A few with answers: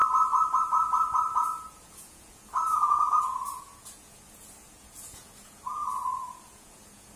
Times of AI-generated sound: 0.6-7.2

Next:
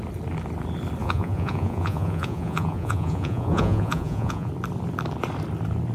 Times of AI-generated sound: 1.0-4.5

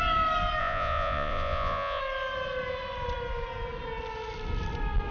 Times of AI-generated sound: 0.6-2.0

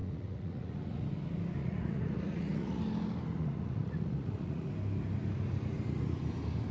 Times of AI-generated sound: 0.0-1.1; 1.6-2.8; 3.4-4.7

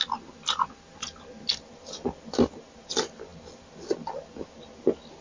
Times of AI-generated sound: none

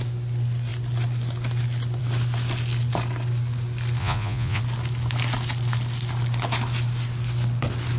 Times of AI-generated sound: 4.0-4.6

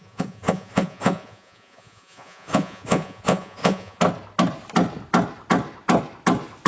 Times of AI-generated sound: 0.0-4.0